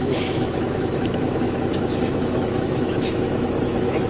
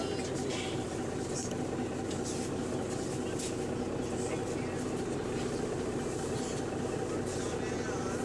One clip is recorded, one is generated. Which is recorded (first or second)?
second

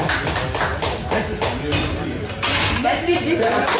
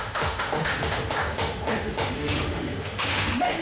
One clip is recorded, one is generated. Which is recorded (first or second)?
first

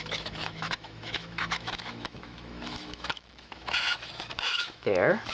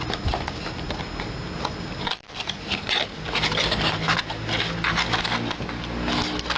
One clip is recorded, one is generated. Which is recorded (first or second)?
second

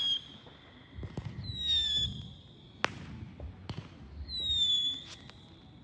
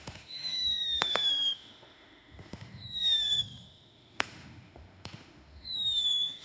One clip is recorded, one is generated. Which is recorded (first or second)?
first